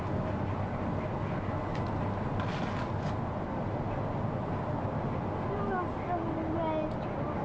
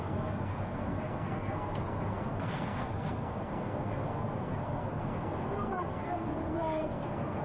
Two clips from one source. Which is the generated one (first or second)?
second